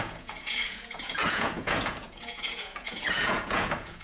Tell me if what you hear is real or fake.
fake